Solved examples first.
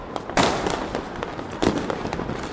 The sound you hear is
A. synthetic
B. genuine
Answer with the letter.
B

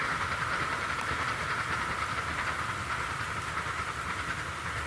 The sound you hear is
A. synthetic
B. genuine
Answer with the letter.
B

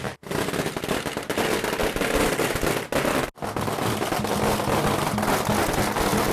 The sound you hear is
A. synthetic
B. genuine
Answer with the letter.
B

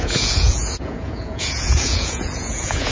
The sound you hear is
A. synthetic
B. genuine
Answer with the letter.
A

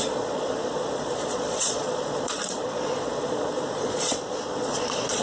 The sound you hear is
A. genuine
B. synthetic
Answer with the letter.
B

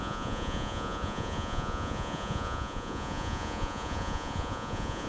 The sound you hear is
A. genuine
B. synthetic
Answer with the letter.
B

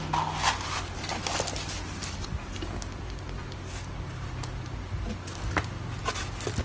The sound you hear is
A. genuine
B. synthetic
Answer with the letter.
A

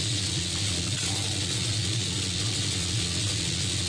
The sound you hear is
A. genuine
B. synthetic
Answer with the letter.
B